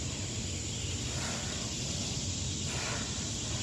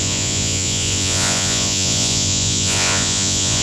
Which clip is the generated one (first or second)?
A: second